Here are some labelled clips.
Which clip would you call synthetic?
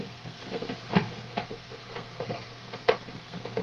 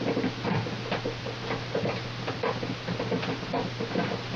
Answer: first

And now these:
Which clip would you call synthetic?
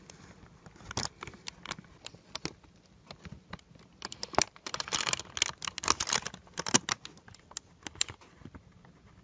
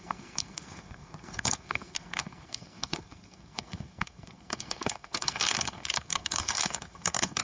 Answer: second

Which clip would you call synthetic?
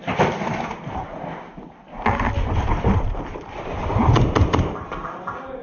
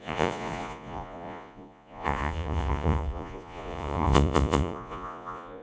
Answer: second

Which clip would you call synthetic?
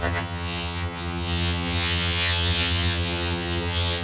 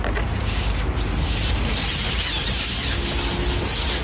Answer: first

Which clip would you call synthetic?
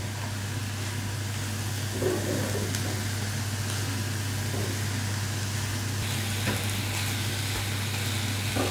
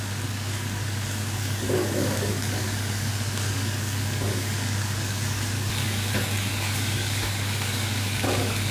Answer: second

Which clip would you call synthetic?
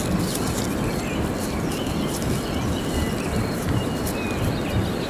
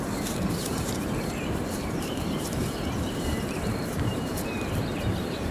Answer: second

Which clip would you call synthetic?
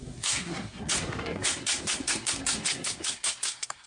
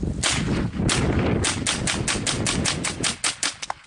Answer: first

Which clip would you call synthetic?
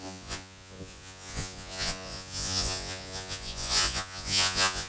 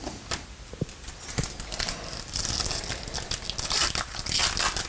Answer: first